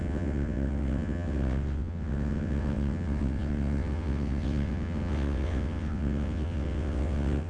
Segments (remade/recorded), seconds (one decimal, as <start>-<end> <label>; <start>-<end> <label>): 0.0-7.5 remade